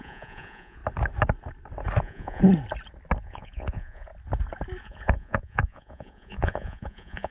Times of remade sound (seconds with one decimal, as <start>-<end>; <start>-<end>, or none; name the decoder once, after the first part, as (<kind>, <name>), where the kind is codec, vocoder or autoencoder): 0.0-0.8 (vocoder, Vocos); 2.0-2.4; 3.2-4.1; 4.8-7.3